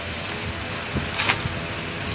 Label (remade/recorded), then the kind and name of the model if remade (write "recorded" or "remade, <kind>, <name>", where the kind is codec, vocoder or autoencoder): recorded